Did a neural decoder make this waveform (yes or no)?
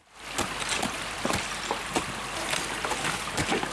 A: no